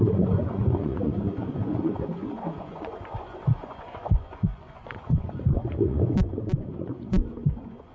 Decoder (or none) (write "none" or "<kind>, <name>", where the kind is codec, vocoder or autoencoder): vocoder, Vocos